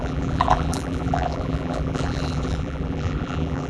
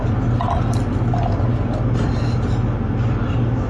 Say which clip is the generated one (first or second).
first